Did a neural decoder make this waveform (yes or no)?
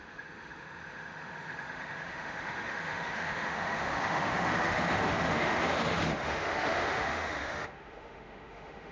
yes